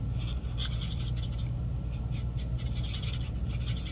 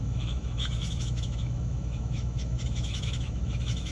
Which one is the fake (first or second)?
second